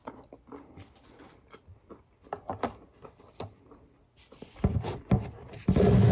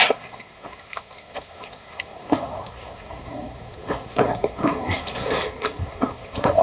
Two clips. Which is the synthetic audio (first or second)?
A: second